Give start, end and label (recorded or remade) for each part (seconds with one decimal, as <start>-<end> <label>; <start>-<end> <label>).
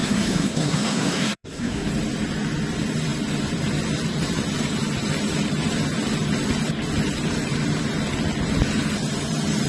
0.0-1.9 remade; 1.9-9.7 recorded